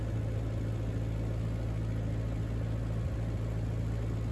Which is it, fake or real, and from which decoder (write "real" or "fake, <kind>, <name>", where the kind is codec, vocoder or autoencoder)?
real